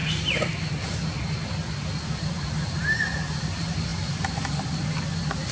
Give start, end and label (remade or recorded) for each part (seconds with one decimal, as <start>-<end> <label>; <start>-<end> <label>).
0.0-5.5 recorded